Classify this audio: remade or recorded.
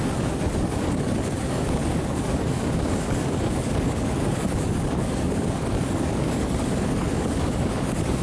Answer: remade